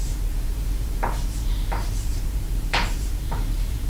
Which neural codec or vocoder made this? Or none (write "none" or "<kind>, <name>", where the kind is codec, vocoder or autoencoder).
vocoder, BigVGAN v2